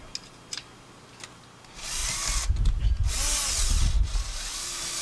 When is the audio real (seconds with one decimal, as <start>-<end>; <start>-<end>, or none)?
0.0-5.0